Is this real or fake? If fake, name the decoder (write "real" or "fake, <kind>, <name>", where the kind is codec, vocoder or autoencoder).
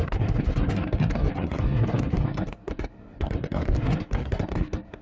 fake, codec, SNAC